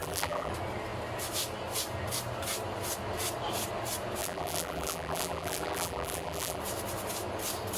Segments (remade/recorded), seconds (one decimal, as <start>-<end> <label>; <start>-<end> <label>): 0.0-0.5 remade; 0.5-4.2 recorded; 4.2-6.6 remade; 6.6-7.8 recorded